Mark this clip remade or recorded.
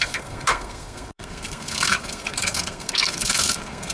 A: remade